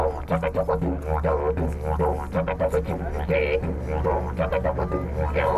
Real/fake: real